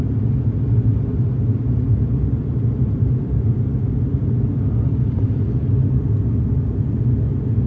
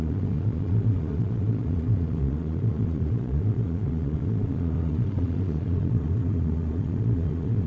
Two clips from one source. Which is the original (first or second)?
first